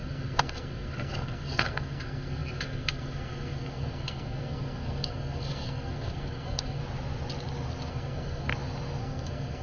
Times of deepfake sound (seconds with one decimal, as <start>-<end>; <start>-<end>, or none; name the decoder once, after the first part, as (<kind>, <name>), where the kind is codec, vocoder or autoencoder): 0.0-6.8 (codec, SNAC); 7.9-8.5; 9.0-9.6